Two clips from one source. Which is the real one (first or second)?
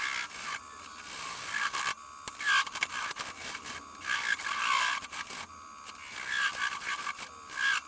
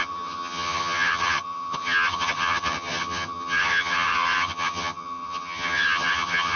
first